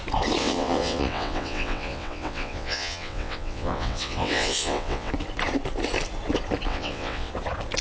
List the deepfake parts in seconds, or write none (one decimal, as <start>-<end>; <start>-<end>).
0.4-5.1; 6.7-7.3